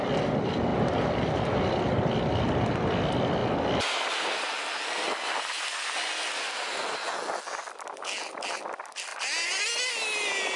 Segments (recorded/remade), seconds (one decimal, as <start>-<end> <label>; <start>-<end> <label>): 0.0-10.6 recorded